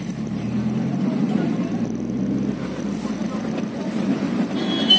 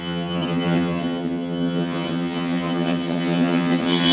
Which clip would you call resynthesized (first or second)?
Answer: second